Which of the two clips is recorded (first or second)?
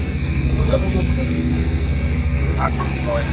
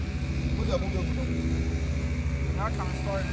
second